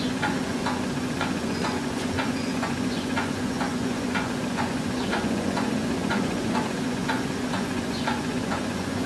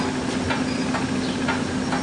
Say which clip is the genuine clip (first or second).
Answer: second